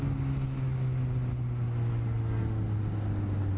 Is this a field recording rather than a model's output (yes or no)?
yes